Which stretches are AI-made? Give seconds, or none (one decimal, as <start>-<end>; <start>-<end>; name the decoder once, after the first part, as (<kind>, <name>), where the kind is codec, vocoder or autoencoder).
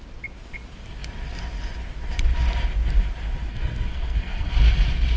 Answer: 3.5-4.5 (codec, SNAC)